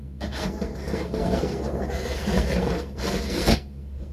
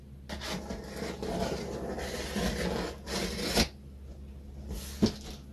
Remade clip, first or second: first